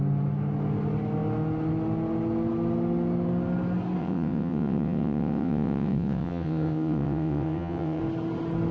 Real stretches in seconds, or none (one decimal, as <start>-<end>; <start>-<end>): 0.0-4.0; 8.0-8.7